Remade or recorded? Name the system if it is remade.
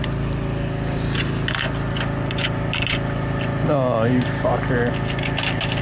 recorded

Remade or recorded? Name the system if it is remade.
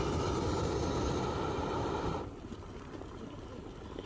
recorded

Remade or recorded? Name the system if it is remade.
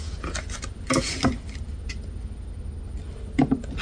recorded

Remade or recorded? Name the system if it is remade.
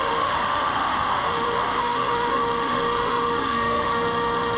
remade, autoencoder, DAC-VAE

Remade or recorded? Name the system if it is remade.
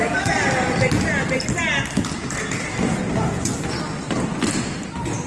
recorded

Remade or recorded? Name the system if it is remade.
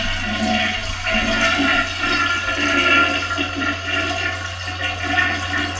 recorded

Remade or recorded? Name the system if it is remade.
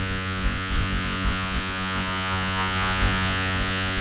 remade, vocoder, Vocos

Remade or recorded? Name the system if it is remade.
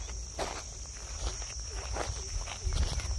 recorded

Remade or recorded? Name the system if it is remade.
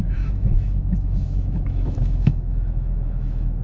remade, autoencoder, DAC-VAE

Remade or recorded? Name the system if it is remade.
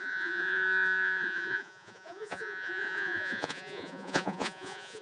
remade, vocoder, Vocos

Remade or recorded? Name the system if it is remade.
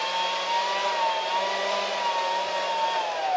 recorded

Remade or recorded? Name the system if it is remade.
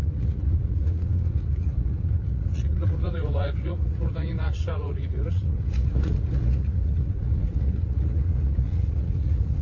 remade, vocoder, Vocos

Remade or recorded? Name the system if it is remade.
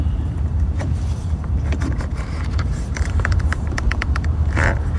remade, vocoder, BigVGAN v2